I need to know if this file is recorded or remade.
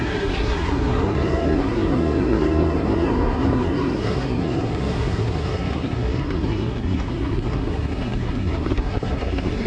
remade